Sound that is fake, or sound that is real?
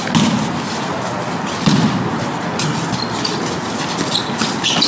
real